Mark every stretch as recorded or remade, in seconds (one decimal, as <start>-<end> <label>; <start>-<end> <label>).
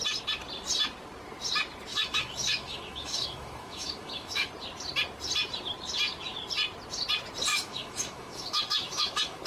0.0-1.9 recorded; 1.9-4.5 remade; 4.5-7.5 recorded; 7.5-9.5 remade